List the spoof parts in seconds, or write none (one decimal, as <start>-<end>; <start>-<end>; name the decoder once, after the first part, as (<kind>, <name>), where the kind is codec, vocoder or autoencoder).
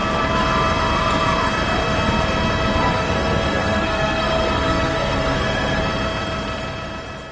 2.8-5.8 (codec, SNAC)